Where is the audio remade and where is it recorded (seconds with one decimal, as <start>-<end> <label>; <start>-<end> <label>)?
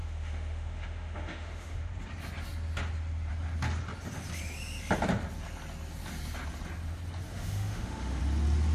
0.0-1.9 remade; 1.9-7.3 recorded; 7.3-8.2 remade; 8.2-8.7 recorded